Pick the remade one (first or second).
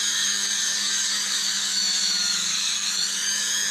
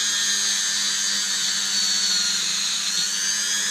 first